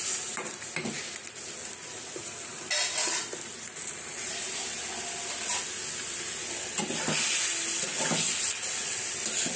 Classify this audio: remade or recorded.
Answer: recorded